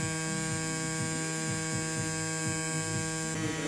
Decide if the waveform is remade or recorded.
recorded